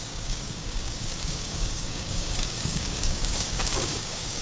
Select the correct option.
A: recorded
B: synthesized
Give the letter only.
B